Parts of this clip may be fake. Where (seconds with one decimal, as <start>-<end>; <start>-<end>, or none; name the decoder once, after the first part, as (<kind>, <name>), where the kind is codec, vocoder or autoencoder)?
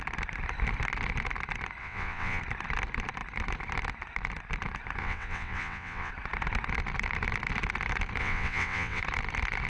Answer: 1.8-2.4 (vocoder, WaveNeXt); 5.0-6.1; 8.2-9.0